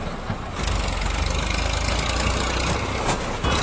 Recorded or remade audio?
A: recorded